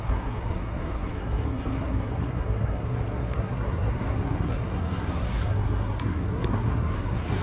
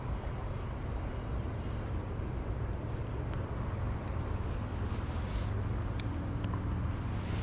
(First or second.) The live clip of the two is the second